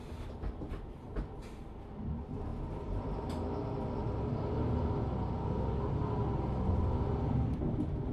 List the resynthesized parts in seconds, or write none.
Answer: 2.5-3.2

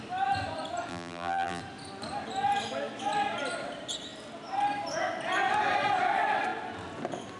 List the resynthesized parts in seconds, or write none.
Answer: 0.9-1.6

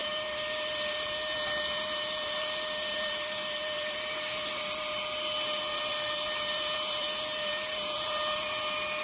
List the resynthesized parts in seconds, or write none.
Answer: 0.0-4.8; 5.7-8.6

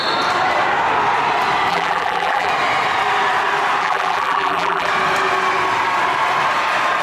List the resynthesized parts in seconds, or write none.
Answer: 1.7-2.5; 3.8-4.9

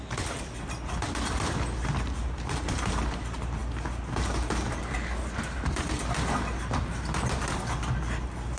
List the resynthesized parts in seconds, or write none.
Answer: none

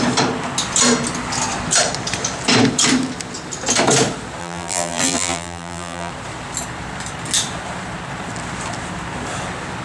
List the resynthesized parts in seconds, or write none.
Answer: 4.4-6.1